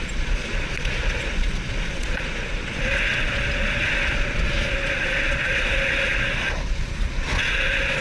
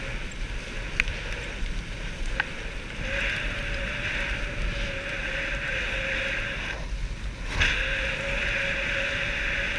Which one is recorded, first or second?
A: second